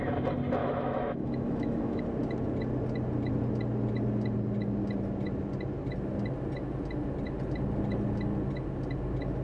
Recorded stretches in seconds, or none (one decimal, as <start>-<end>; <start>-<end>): 0.0-0.6; 2.0-9.4